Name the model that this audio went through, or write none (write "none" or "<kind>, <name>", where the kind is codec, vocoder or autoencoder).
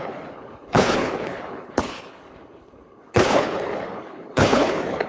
codec, HILCodec